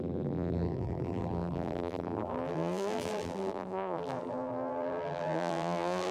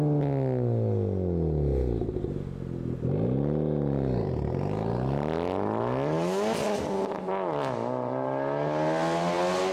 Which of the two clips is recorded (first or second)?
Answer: second